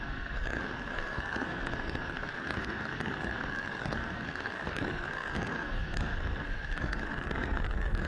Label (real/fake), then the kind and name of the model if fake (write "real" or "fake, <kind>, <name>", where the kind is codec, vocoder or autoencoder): fake, codec, SNAC